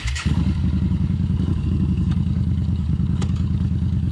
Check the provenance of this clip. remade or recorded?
remade